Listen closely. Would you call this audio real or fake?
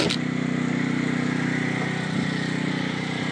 real